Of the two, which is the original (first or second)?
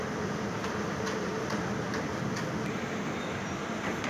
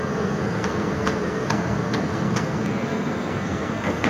first